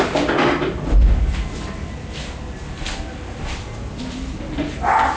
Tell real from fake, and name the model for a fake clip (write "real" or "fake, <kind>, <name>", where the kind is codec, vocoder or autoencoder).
real